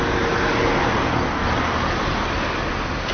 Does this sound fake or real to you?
real